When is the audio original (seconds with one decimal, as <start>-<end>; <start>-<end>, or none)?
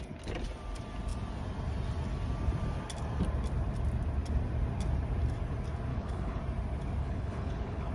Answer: 0.0-5.9; 6.4-7.0